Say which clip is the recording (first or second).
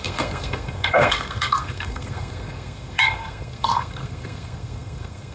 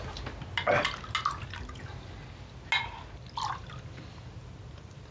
second